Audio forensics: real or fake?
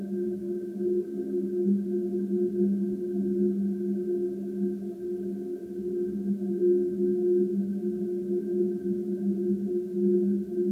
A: real